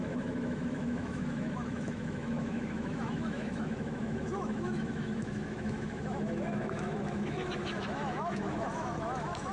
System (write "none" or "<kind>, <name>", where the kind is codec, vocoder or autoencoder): autoencoder, DAC-VAE